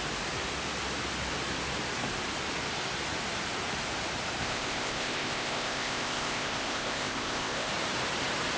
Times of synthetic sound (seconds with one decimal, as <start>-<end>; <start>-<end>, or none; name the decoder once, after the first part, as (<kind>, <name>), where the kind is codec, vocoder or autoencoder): 4.4-7.7 (codec, ZipCodec)